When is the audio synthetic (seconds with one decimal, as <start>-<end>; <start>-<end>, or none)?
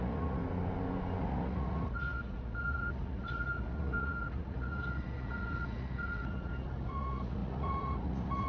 0.0-0.4; 1.2-8.5